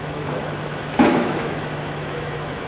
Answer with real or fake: fake